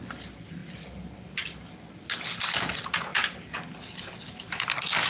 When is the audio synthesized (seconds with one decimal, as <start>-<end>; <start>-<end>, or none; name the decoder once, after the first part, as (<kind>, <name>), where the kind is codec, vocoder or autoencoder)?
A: none

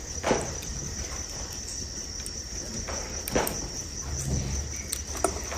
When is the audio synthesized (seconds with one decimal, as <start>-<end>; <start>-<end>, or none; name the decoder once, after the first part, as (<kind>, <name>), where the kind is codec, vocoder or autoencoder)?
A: none

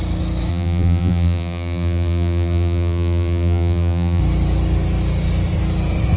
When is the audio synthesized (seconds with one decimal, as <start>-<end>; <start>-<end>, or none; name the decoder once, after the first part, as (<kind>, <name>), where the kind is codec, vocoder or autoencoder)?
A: 0.5-4.2 (vocoder, BigVGAN v2)